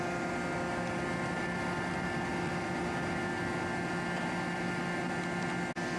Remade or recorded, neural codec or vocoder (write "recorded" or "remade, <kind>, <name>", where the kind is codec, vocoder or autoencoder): recorded